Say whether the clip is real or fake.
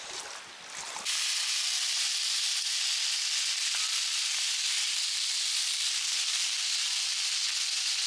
real